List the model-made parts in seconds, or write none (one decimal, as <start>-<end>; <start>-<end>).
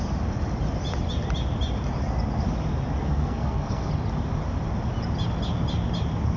3.0-3.9